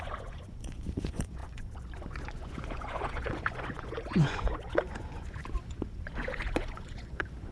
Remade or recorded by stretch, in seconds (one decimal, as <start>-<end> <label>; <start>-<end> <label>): 0.0-7.5 remade